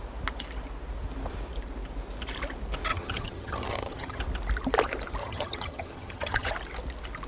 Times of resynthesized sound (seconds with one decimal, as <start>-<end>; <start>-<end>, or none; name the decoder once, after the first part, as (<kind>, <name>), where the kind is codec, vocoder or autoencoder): 2.9-4.2 (vocoder, HiFi-GAN); 5.2-6.5